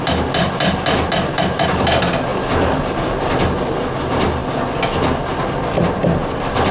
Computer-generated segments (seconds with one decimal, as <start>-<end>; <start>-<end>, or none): 2.3-3.3; 6.2-6.7